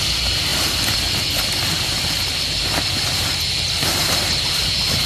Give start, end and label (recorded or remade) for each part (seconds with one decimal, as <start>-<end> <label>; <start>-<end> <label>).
0.0-5.1 recorded